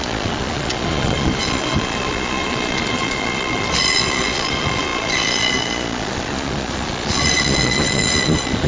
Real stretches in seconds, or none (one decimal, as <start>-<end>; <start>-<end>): none